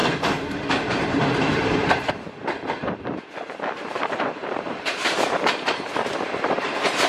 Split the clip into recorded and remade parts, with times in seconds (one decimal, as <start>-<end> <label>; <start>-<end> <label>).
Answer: 0.0-2.1 remade; 2.1-2.8 recorded; 2.8-7.1 remade